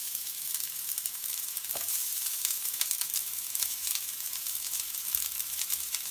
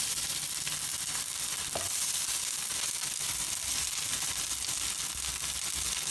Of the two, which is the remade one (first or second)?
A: first